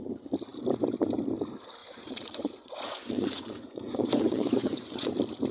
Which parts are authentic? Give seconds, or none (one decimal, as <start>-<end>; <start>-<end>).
0.0-1.8; 5.1-5.5